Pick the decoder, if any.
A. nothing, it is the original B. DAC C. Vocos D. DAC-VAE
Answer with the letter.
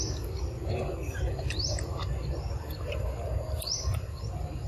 A